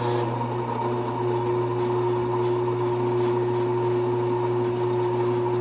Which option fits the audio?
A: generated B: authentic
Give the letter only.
B